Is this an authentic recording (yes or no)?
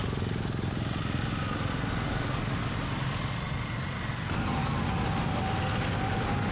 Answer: yes